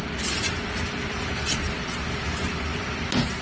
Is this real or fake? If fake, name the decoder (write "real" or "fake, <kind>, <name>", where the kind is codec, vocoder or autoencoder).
real